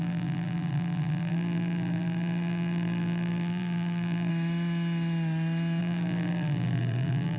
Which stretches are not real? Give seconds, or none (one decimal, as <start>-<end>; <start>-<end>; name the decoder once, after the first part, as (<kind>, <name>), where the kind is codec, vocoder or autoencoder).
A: 0.0-4.3 (vocoder, BigVGAN v2); 5.8-7.4